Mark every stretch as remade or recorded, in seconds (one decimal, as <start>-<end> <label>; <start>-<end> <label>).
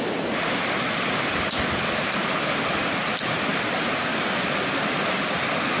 0.0-2.2 recorded; 2.2-2.8 remade; 2.8-5.8 recorded